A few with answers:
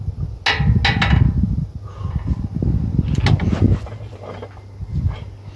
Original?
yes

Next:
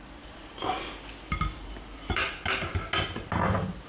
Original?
yes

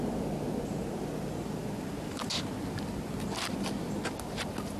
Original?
yes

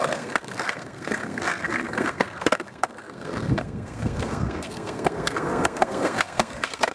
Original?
no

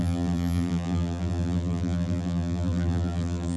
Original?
no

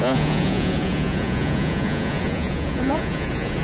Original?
no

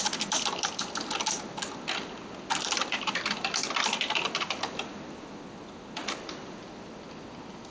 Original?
yes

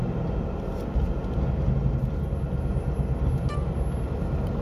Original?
yes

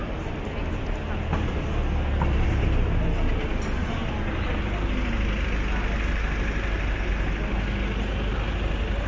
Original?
yes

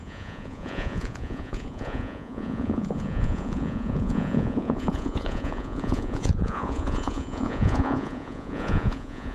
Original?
no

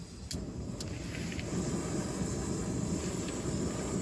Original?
yes